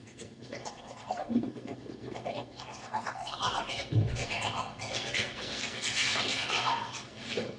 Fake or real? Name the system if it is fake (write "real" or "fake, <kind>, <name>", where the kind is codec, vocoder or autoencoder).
fake, codec, SNAC